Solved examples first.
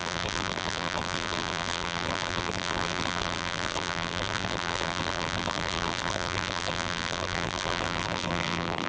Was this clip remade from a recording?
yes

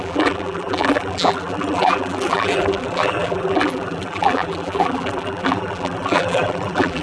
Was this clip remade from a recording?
yes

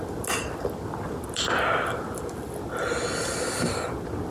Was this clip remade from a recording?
no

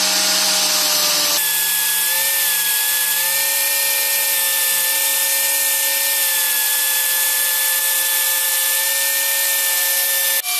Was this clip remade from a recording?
no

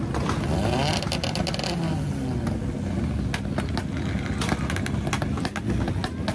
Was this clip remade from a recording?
no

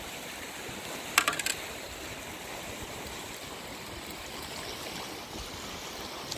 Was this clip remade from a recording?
no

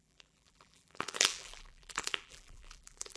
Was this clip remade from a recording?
yes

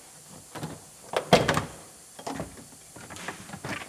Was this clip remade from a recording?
no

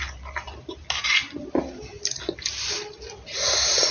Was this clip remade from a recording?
no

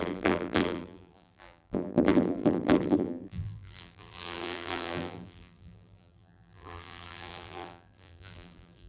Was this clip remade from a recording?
yes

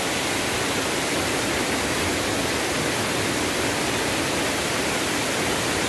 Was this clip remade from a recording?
no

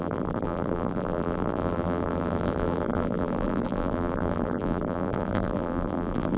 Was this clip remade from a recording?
yes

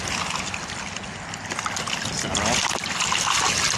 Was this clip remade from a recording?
no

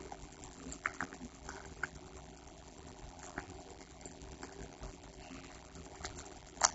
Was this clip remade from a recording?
yes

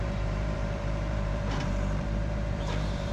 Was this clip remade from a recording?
yes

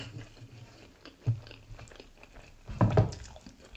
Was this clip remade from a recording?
no